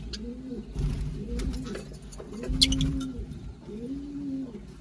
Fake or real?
real